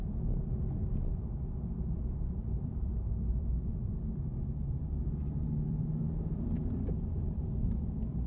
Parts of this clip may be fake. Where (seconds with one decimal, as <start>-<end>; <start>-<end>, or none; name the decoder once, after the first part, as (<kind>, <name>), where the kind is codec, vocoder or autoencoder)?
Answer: 1.6-8.3 (vocoder, BigVGAN v2)